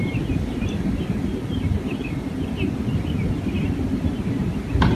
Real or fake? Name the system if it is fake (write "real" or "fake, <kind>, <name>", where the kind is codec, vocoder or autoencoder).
real